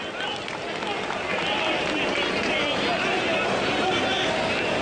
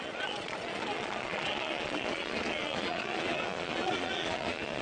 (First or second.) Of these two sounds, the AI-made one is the second